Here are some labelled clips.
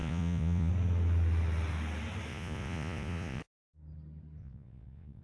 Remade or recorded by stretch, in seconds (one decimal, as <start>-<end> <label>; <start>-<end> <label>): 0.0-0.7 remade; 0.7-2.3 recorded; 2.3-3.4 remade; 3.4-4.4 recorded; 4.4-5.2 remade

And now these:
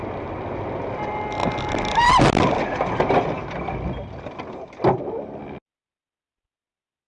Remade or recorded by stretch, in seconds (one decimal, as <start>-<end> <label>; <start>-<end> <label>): 0.0-7.1 recorded

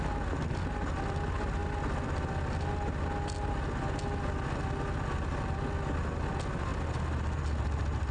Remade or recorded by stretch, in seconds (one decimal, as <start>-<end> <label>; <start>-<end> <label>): 0.0-8.1 recorded

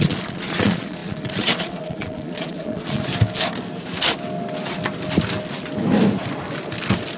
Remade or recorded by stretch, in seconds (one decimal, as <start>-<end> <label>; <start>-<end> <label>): 0.0-3.1 remade; 3.1-7.2 recorded

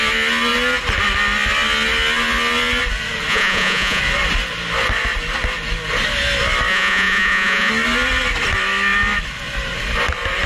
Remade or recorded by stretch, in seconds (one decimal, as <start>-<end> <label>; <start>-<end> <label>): 0.0-3.3 recorded; 3.3-4.0 remade; 4.0-6.7 recorded; 6.7-7.7 remade; 7.7-10.5 recorded

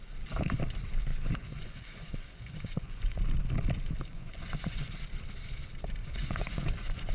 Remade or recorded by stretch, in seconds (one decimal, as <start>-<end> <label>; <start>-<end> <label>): 0.0-1.1 recorded; 1.1-3.2 remade; 3.2-4.1 recorded; 4.1-4.9 remade; 4.9-6.0 recorded; 6.0-7.1 remade